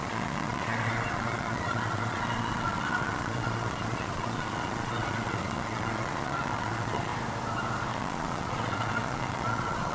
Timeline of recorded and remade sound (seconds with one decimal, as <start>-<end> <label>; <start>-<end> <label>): 0.0-7.1 remade; 7.1-7.9 recorded; 7.9-9.9 remade